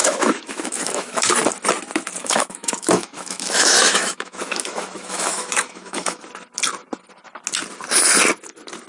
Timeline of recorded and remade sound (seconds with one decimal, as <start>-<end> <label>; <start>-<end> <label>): 0.0-1.3 remade; 1.3-2.2 recorded; 2.2-6.2 remade; 6.2-8.9 recorded